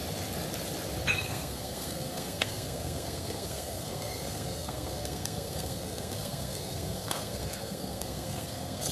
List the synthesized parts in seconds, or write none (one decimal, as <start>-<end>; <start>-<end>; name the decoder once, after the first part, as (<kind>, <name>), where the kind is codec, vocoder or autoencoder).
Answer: 1.1-8.9 (codec, SNAC)